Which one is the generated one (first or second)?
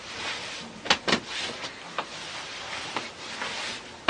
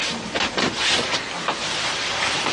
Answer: second